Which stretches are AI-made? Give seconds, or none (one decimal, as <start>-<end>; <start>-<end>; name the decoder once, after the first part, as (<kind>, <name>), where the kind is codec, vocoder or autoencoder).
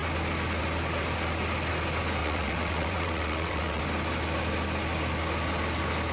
2.2-3.8 (vocoder, WaveNeXt)